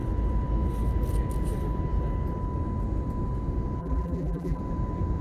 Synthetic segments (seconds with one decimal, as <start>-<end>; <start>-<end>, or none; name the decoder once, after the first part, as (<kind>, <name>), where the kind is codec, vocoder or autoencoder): 3.8-4.6 (vocoder, BigVGAN v2)